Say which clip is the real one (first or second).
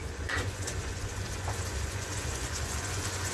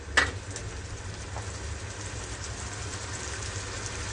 second